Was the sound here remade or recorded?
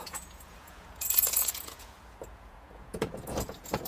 remade